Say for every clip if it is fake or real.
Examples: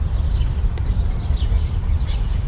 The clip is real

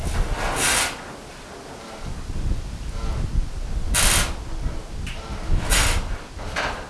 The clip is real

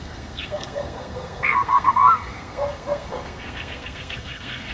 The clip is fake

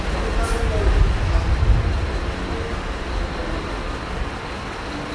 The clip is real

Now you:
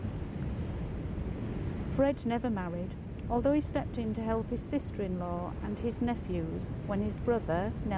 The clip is real